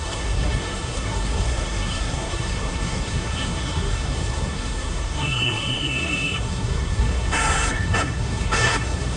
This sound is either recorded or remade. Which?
remade